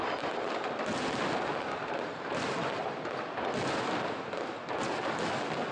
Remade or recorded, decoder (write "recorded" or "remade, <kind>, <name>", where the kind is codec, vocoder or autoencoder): recorded